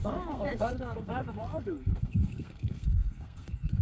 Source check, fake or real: fake